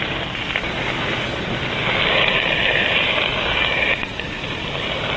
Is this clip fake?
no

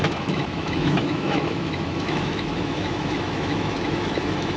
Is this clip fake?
yes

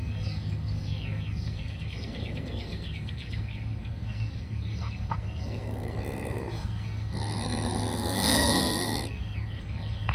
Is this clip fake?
yes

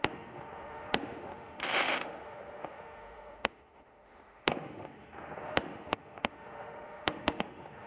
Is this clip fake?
yes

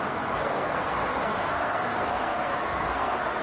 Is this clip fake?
yes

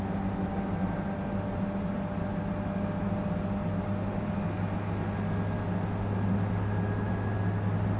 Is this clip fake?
no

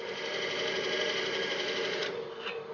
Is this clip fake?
no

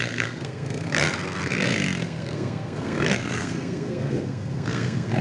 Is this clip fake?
yes